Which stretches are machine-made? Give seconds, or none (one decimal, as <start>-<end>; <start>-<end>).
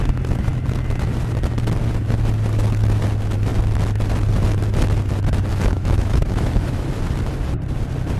5.5-6.9